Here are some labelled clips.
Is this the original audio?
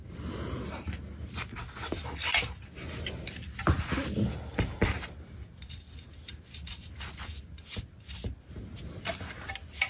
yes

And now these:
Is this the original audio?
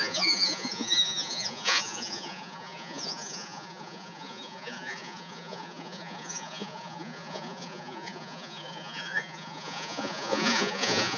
no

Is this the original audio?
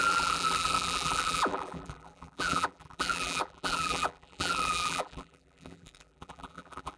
no